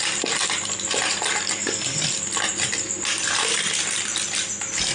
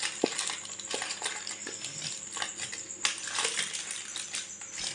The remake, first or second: first